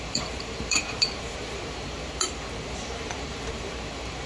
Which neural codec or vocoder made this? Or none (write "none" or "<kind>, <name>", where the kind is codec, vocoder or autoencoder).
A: vocoder, BigVGAN v2